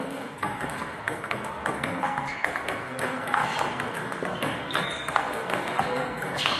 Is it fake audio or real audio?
fake